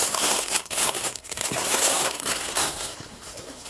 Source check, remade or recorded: remade